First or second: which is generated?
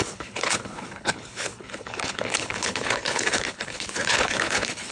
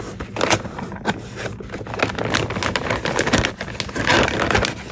first